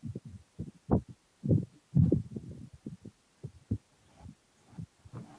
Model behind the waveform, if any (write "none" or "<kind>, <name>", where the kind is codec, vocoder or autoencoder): none